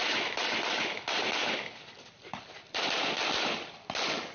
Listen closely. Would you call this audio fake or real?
real